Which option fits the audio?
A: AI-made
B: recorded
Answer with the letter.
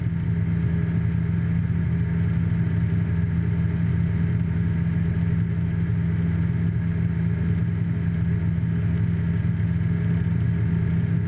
B